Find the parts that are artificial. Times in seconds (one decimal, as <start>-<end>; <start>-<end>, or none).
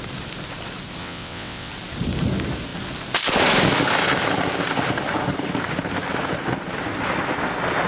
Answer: 1.0-1.7